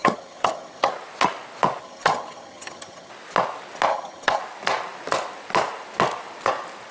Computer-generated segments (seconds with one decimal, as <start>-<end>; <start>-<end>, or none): 0.0-0.9; 1.8-3.1; 3.9-4.4